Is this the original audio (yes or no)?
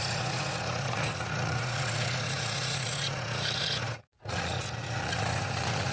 no